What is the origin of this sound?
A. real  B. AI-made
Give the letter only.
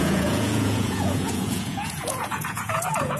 B